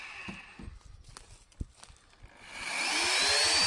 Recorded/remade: recorded